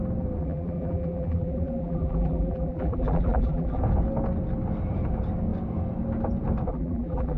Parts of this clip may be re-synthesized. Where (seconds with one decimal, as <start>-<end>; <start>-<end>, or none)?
0.4-3.8; 6.7-7.4